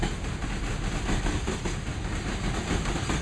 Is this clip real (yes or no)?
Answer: yes